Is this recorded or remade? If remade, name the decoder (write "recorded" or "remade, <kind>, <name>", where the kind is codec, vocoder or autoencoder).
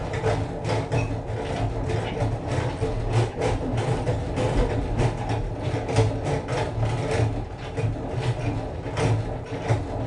recorded